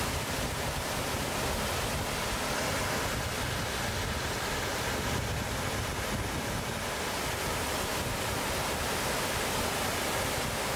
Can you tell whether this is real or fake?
real